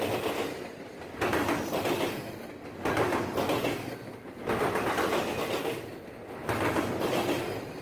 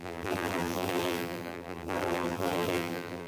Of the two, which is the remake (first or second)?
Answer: second